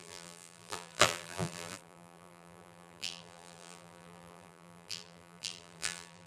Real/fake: fake